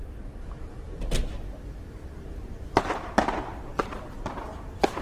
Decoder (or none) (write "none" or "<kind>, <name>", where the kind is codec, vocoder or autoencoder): vocoder, BigVGAN v2